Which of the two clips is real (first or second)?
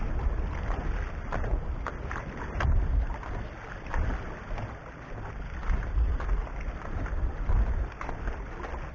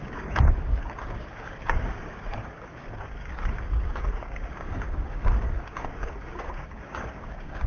first